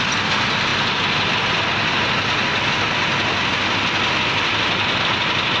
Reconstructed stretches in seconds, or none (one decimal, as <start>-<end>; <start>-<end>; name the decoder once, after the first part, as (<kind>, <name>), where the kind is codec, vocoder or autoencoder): none